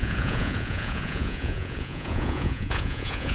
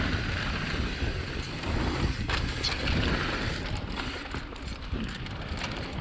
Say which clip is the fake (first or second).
first